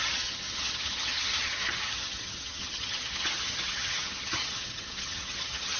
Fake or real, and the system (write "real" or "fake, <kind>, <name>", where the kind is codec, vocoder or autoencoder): fake, vocoder, HiFi-GAN